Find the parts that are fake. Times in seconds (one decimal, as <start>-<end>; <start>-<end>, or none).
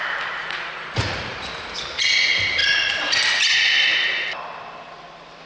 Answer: 0.4-1.4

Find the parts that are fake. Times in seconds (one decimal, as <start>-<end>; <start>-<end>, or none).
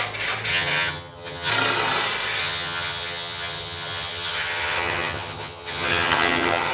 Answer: 0.5-1.5; 2.4-6.7